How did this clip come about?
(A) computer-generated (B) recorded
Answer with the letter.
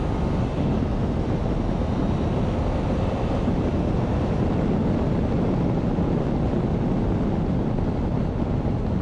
B